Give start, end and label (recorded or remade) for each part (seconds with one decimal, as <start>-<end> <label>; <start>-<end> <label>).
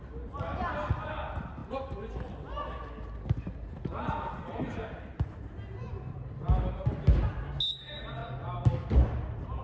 0.0-8.2 recorded; 8.2-9.6 remade